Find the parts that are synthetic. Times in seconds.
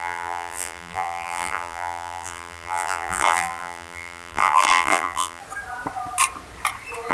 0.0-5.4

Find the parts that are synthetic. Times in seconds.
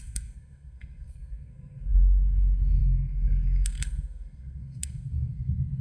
0.0-5.8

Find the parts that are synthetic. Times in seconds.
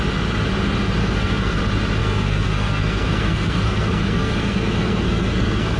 1.0-1.6; 2.0-5.8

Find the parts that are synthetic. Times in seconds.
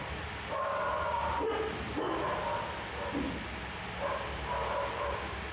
0.7-1.3